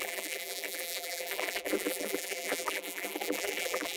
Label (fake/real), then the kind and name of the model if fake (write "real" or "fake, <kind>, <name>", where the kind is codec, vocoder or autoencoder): fake, vocoder, BigVGAN v2